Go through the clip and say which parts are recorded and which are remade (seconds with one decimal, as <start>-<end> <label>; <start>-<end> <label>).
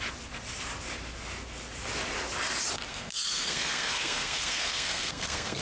0.0-2.9 recorded; 2.9-5.6 remade